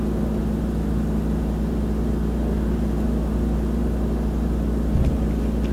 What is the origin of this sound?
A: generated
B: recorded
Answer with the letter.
B